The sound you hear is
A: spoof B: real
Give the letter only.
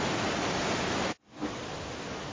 B